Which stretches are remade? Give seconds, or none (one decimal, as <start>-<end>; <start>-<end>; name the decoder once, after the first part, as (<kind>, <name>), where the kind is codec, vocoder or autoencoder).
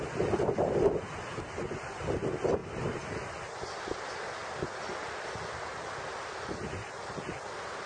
none